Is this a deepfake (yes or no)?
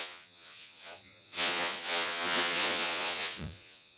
yes